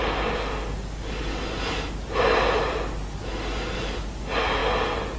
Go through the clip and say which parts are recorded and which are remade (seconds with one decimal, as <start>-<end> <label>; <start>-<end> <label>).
0.0-5.2 recorded